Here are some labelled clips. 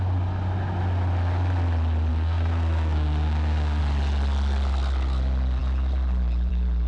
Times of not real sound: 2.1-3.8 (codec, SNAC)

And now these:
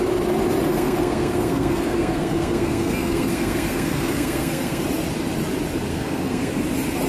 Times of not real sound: 0.7-4.8 (codec, SNAC); 5.9-6.5

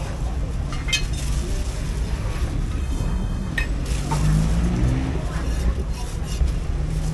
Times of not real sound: 2.8-3.5 (codec, SNAC)